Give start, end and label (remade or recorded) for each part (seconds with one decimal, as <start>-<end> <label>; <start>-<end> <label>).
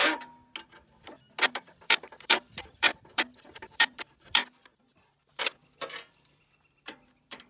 0.0-1.4 recorded; 1.4-4.4 remade; 4.4-5.3 recorded; 5.3-7.5 remade